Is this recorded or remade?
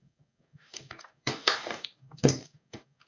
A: remade